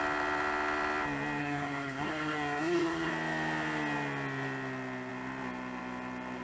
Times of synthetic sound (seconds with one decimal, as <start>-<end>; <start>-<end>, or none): 1.4-3.1